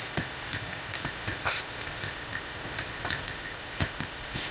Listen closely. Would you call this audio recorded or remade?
remade